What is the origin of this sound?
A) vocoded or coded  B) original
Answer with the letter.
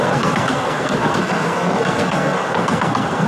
A